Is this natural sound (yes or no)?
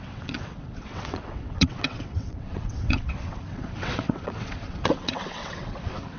no